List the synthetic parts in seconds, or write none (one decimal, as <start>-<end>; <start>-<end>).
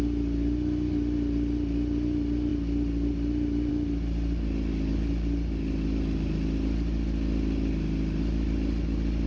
none